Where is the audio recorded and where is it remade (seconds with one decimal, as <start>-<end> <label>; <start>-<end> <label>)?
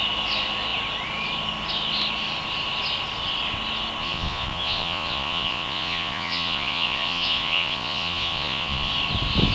0.0-4.0 recorded; 4.0-8.9 remade; 8.9-9.5 recorded